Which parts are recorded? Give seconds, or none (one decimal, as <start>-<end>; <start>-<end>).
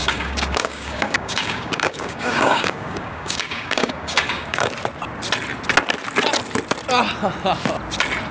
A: 4.7-8.3